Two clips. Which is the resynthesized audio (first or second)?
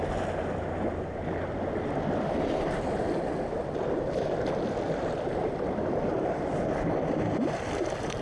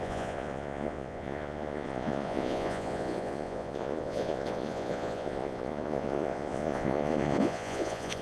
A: second